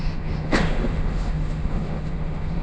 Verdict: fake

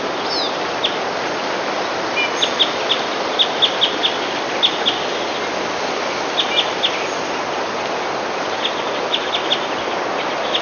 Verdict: real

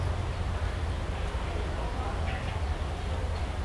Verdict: real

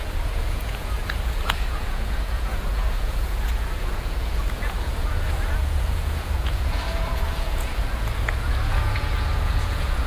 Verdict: fake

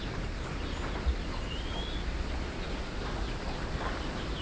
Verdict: real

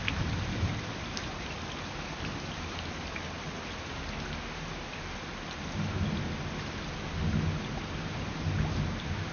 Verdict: real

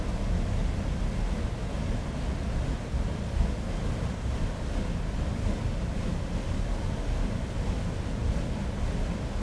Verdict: real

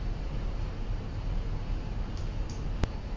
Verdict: real